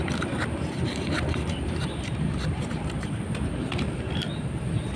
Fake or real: fake